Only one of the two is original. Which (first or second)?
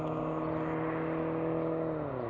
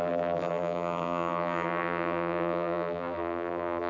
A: first